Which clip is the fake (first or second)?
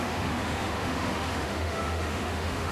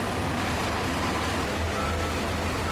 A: first